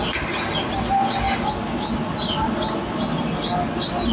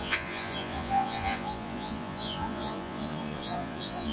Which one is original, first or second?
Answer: first